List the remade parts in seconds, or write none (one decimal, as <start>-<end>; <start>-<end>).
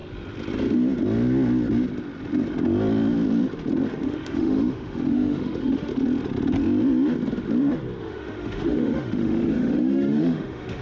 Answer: 3.9-5.9; 8.0-10.8